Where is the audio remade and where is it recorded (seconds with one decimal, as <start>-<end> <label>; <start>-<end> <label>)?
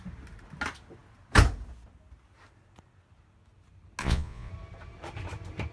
0.0-4.0 recorded; 4.0-4.5 remade; 4.5-5.7 recorded